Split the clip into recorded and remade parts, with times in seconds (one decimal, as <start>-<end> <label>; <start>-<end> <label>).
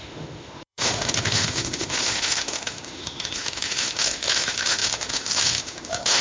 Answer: 0.0-6.2 remade